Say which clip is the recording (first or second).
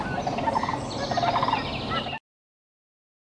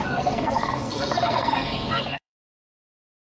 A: first